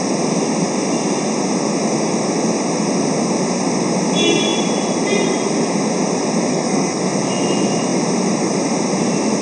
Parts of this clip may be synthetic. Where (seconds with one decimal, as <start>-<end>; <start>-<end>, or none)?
6.5-7.0